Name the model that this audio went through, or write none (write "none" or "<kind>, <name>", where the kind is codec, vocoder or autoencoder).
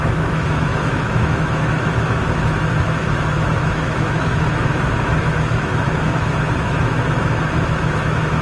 autoencoder, DAC-VAE